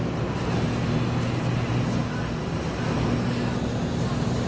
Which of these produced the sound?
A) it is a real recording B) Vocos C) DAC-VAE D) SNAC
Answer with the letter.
A